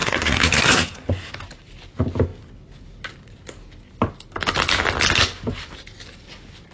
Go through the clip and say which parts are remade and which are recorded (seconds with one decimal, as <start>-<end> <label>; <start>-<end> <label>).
0.0-1.3 remade; 1.3-6.7 recorded